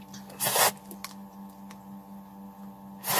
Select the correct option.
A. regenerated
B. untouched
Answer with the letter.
B